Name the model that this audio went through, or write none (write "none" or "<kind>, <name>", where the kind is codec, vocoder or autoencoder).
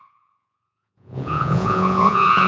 vocoder, Vocos